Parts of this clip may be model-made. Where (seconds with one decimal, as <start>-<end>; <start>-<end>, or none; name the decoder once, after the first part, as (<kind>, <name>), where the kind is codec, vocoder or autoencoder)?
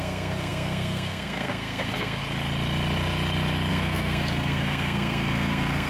0.0-2.2 (codec, SNAC); 3.7-5.9